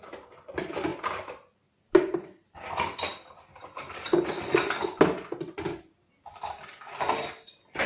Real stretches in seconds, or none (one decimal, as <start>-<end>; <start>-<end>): 0.0-7.9